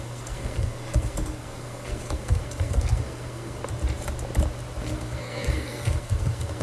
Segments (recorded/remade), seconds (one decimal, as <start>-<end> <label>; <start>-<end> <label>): 0.0-3.6 remade; 3.6-4.8 recorded; 4.8-6.6 remade